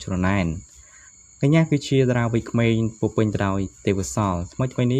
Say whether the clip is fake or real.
fake